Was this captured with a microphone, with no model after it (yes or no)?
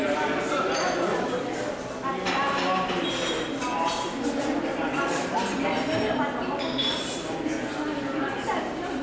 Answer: yes